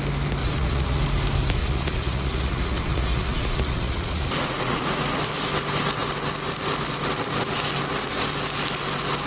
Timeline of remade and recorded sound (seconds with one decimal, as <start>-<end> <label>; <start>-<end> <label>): 0.0-0.4 recorded; 0.4-1.0 remade; 1.0-1.6 recorded; 1.6-5.2 remade; 5.2-9.3 recorded